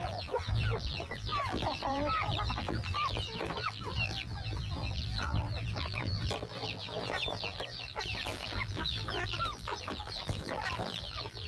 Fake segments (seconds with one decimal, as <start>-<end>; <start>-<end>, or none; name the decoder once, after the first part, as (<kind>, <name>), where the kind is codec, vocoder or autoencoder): 0.0-11.5 (vocoder, BigVGAN v2)